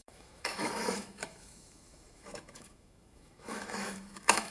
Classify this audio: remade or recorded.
remade